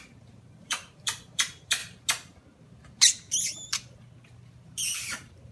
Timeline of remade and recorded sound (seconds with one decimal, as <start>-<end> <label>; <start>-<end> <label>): 0.0-1.8 remade; 1.8-5.0 recorded; 5.0-5.5 remade